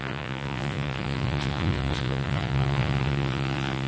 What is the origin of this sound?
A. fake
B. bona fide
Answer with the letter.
A